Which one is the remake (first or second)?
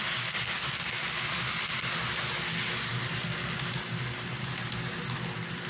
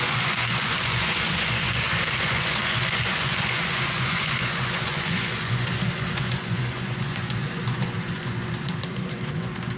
second